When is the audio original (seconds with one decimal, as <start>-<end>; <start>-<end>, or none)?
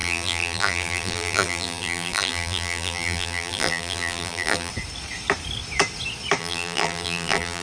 4.7-6.4